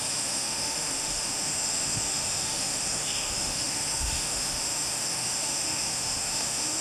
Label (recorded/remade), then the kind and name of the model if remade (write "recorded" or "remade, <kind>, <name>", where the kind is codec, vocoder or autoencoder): remade, autoencoder, DAC-VAE